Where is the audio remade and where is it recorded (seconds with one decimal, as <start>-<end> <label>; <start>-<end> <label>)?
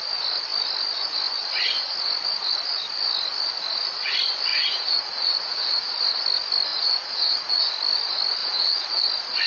0.0-4.5 recorded; 4.5-5.9 remade; 5.9-6.7 recorded; 6.7-7.7 remade; 7.7-8.4 recorded; 8.4-9.0 remade; 9.0-9.5 recorded